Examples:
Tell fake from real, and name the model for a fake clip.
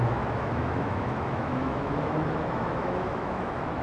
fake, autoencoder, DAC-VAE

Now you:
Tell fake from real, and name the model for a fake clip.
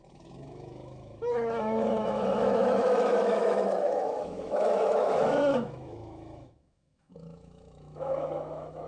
fake, autoencoder, DAC-VAE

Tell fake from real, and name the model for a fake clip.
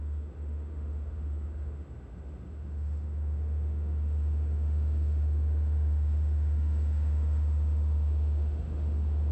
fake, autoencoder, DAC-VAE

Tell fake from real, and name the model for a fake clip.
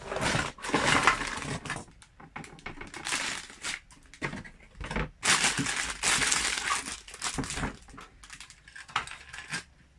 real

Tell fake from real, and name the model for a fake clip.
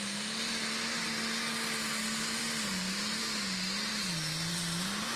real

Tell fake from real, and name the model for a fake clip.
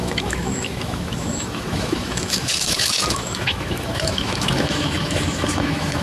fake, autoencoder, DAC-VAE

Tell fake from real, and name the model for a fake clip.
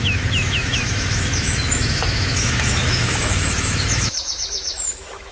fake, autoencoder, DAC-VAE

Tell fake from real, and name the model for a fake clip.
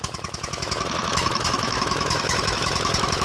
fake, autoencoder, DAC-VAE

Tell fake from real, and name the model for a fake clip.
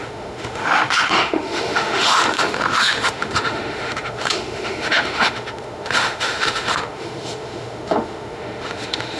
fake, autoencoder, DAC-VAE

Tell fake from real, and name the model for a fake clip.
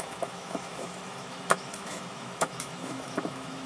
fake, autoencoder, DAC-VAE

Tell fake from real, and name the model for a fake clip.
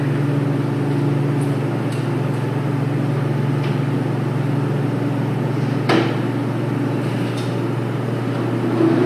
real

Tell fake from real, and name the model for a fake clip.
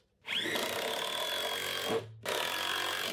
real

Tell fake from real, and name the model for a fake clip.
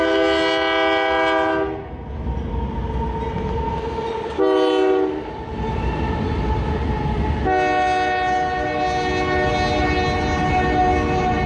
real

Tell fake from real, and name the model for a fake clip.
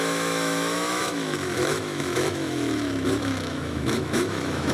fake, autoencoder, DAC-VAE